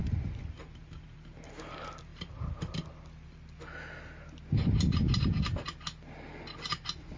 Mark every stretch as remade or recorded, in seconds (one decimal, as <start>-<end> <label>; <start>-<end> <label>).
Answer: 0.0-1.7 remade; 1.7-2.1 recorded; 2.1-3.7 remade; 3.7-7.2 recorded